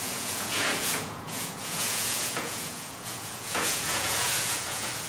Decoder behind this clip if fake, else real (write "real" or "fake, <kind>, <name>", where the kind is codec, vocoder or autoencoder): fake, vocoder, Vocos